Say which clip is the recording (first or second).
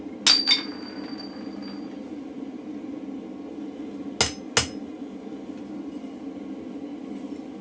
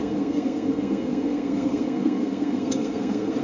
first